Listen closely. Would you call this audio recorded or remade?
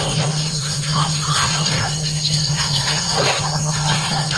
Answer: remade